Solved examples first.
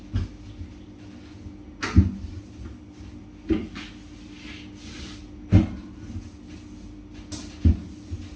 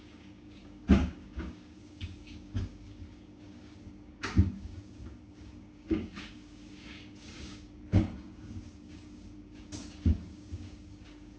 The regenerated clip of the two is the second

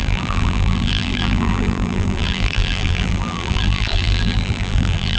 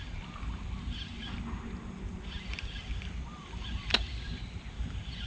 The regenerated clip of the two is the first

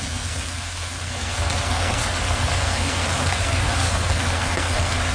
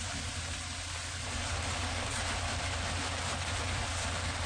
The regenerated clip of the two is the first